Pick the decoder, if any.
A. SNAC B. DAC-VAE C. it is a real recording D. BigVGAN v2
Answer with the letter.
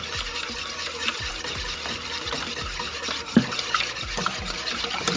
D